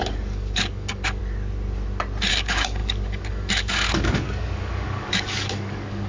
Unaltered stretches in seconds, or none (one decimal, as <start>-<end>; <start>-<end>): 1.2-2.3